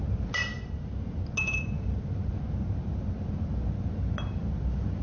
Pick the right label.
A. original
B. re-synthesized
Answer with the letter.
A